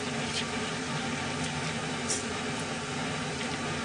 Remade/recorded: recorded